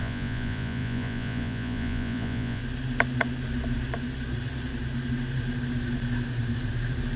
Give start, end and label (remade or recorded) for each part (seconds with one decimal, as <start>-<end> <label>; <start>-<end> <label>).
0.0-2.6 remade; 2.6-7.2 recorded